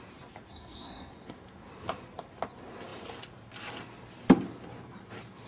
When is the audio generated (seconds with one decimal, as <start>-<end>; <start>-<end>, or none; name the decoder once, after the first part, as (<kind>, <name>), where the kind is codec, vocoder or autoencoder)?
0.5-1.1 (codec, SNAC)